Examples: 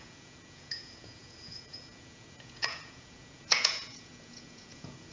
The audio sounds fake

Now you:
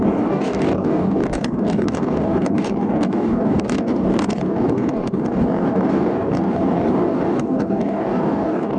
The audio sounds fake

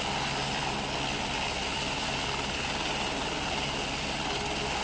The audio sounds real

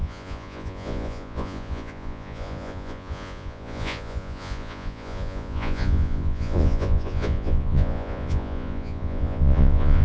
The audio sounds fake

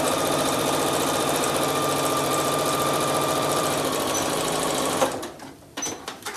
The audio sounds fake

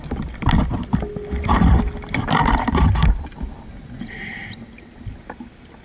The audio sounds real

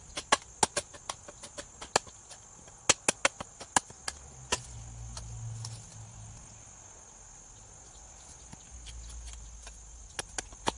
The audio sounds real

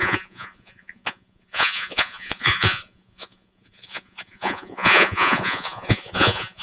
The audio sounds fake